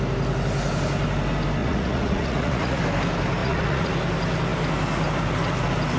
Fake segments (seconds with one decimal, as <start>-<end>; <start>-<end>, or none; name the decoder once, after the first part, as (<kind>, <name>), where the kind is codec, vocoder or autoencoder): 1.6-2.8 (vocoder, Vocos); 3.4-3.9